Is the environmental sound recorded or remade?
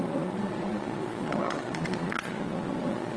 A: remade